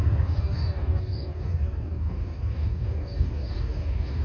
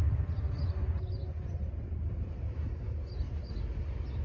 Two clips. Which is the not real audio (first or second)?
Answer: first